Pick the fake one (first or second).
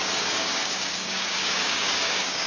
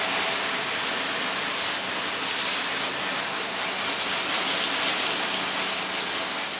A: first